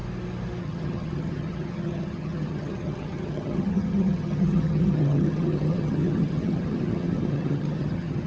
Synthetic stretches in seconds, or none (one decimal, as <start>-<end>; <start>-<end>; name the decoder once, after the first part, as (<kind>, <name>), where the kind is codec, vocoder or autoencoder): 0.6-8.3 (vocoder, HiFi-GAN)

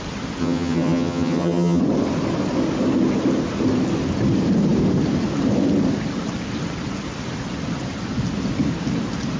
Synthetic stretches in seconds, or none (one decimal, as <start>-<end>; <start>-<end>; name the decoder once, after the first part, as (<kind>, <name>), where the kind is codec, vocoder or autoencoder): 0.4-1.8 (vocoder, HiFi-GAN)

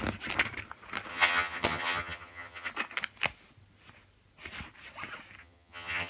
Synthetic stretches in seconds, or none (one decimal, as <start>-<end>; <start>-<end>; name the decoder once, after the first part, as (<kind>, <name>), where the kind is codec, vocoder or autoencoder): 1.1-2.7 (vocoder, HiFi-GAN); 5.4-6.1

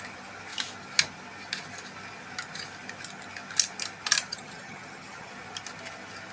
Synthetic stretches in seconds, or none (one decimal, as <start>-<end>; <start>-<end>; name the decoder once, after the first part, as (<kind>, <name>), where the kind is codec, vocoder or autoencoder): 4.3-5.3 (vocoder, HiFi-GAN)

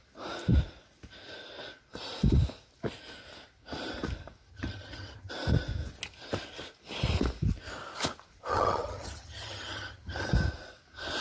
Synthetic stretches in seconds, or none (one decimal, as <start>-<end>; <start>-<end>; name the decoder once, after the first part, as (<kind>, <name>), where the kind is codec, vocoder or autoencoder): 4.5-5.3 (vocoder, HiFi-GAN); 8.5-10.3

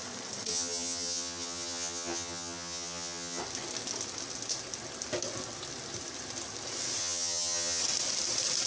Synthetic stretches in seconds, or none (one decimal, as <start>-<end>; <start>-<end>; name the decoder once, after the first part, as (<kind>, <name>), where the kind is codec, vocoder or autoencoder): 0.5-3.4 (vocoder, HiFi-GAN); 7.0-7.8

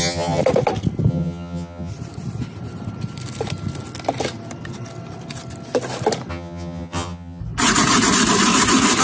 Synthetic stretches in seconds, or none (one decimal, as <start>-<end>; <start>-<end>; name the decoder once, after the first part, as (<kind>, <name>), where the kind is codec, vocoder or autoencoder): 0.0-0.4 (vocoder, HiFi-GAN); 1.1-1.9; 6.3-7.4